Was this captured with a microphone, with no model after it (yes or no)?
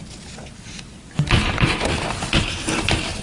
yes